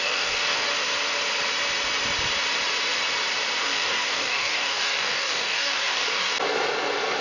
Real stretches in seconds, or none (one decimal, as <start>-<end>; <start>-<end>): 0.7-3.6; 6.3-7.2